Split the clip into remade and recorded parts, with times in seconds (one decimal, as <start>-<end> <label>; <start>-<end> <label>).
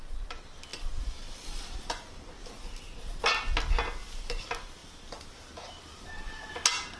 0.0-0.7 recorded; 0.7-2.5 remade; 2.5-4.8 recorded; 4.8-5.8 remade; 5.8-7.0 recorded